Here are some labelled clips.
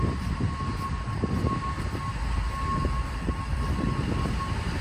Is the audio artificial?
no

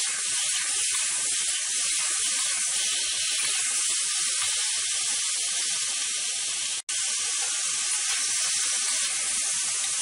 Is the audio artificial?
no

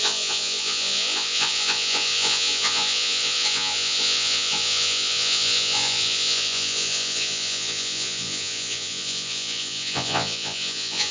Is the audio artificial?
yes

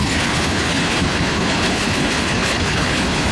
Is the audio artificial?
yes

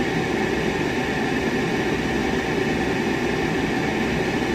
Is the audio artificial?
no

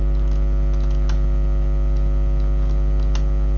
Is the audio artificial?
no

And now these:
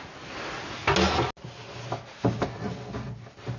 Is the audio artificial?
no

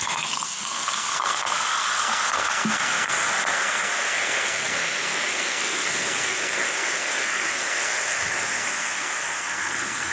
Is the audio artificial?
yes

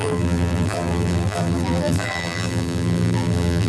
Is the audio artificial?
yes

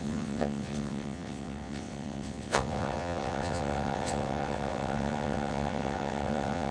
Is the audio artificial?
yes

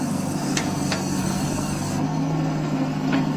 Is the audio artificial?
yes